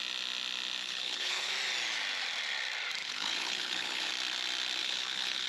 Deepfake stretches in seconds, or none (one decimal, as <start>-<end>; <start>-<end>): 0.8-1.5; 3.0-4.1; 4.8-5.5